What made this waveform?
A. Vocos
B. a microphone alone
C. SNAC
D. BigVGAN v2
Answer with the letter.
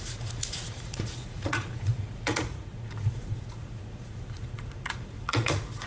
A